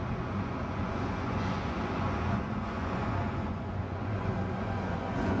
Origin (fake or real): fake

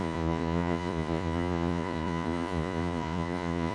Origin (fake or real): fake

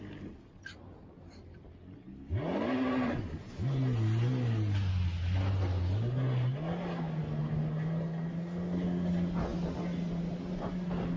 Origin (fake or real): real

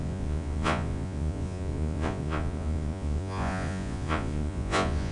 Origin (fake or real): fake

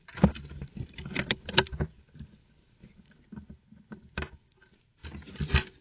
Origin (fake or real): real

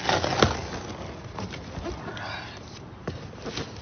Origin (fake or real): real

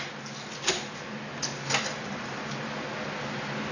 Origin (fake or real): real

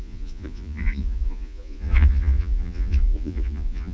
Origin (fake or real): fake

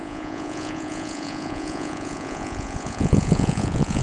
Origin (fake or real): fake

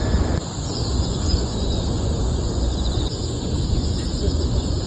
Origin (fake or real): fake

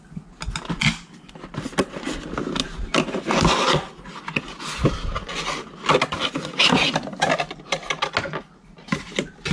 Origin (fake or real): real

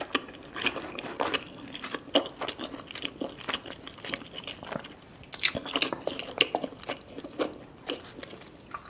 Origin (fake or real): real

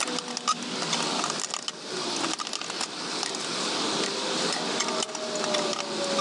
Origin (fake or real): real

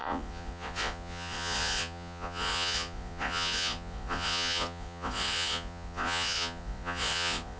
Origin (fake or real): fake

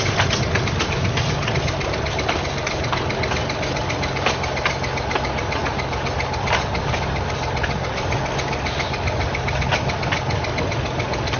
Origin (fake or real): real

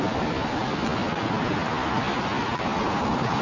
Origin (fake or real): real